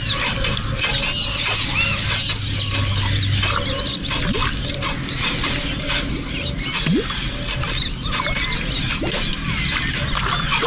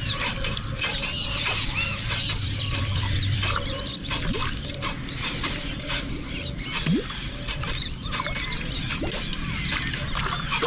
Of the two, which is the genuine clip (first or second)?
first